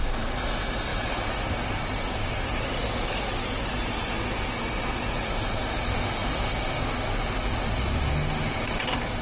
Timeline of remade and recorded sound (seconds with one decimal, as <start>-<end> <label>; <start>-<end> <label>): 0.0-0.9 recorded; 0.9-2.3 remade; 2.3-6.2 recorded; 6.2-6.8 remade; 6.8-9.2 recorded